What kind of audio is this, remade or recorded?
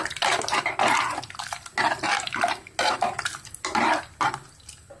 recorded